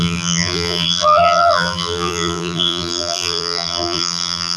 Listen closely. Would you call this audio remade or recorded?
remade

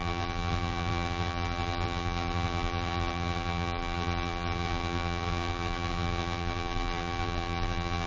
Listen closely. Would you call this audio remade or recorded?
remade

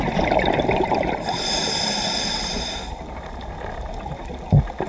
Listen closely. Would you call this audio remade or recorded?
recorded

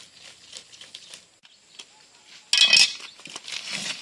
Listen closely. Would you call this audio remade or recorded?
recorded